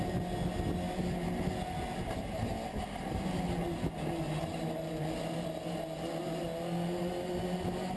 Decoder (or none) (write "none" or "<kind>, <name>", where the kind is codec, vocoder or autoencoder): none